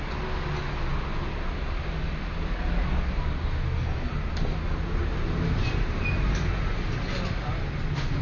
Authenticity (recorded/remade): recorded